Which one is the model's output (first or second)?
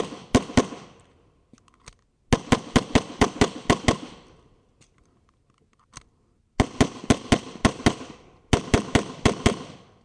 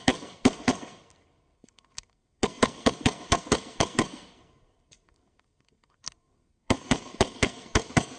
second